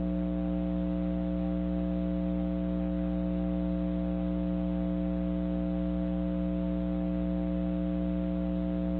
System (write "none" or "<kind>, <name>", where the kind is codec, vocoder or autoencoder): none